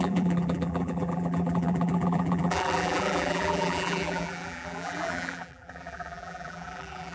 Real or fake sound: fake